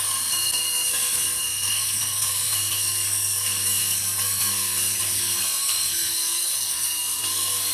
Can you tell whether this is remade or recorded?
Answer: remade